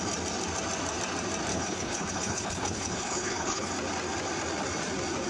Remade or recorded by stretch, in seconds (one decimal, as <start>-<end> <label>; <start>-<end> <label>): 0.0-1.5 recorded; 1.5-3.7 remade; 3.7-5.3 recorded